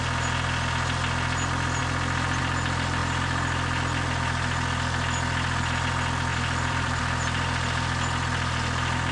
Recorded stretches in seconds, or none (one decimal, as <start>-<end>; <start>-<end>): 0.0-6.3; 7.0-9.1